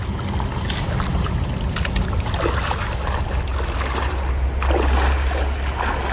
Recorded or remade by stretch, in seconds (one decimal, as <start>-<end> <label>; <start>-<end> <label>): 0.0-6.1 recorded